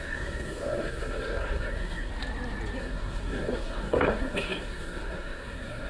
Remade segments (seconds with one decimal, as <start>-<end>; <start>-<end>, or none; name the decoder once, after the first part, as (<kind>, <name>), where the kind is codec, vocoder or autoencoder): 0.0-2.1 (codec, SNAC); 2.8-5.9